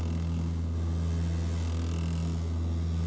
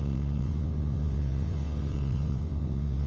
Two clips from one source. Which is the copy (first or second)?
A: second